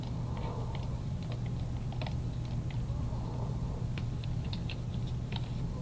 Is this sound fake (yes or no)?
yes